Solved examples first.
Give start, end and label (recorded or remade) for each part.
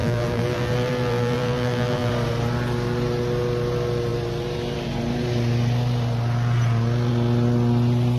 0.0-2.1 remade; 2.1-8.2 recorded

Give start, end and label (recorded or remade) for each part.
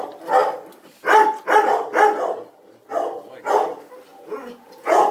0.0-4.1 recorded; 4.1-5.1 remade